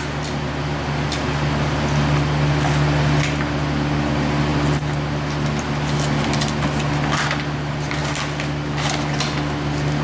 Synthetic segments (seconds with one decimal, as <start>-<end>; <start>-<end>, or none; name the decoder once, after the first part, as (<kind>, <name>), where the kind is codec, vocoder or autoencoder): none